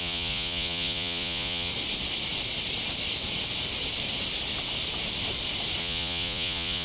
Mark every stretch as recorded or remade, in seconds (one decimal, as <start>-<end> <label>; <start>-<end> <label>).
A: 0.0-1.7 remade; 1.7-5.8 recorded; 5.8-6.8 remade

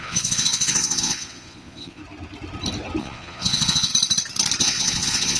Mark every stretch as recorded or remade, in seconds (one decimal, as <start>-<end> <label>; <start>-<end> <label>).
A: 0.0-2.0 remade; 2.0-3.0 recorded; 3.0-3.9 remade; 3.9-4.6 recorded; 4.6-5.4 remade